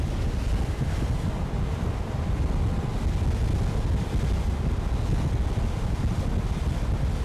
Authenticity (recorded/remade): recorded